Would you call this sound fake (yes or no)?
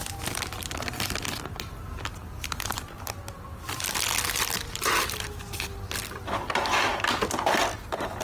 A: no